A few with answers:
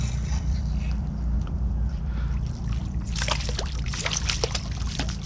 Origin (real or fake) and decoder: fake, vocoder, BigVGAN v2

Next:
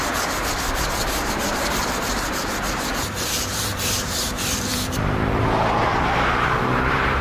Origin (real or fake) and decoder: fake, vocoder, BigVGAN v2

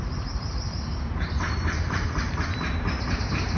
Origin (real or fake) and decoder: fake, vocoder, BigVGAN v2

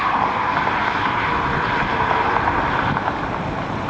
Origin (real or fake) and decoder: fake, vocoder, BigVGAN v2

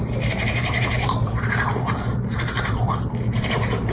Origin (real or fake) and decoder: fake, vocoder, BigVGAN v2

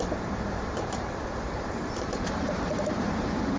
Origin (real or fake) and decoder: fake, vocoder, BigVGAN v2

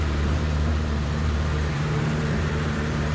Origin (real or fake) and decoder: fake, vocoder, BigVGAN v2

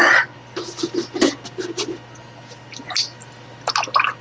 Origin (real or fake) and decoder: real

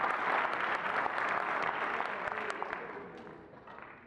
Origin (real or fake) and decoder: real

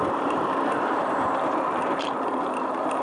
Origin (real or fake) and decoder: fake, vocoder, BigVGAN v2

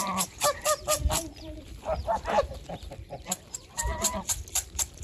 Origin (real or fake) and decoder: fake, vocoder, BigVGAN v2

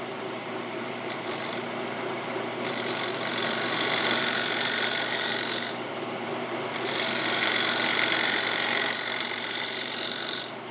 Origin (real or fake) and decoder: fake, vocoder, BigVGAN v2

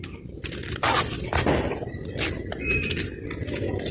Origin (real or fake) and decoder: real